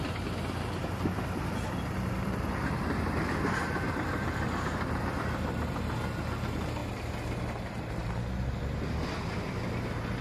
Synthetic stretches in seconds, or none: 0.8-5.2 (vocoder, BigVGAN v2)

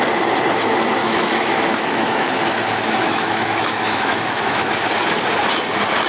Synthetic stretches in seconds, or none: 1.0-4.7 (autoencoder, DAC-VAE)

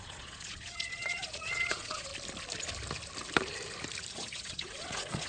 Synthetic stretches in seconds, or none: 0.0-2.1 (vocoder, Vocos); 4.1-5.3

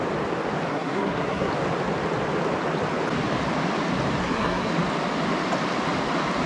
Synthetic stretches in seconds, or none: 0.7-1.5 (codec, SNAC); 4.2-4.7